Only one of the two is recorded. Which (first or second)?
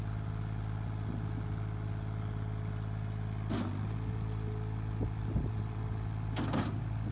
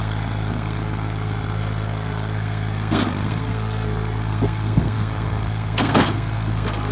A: first